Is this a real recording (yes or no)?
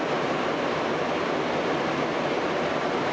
yes